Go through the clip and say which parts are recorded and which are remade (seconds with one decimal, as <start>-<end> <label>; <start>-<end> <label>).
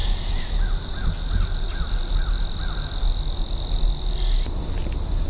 0.0-5.3 recorded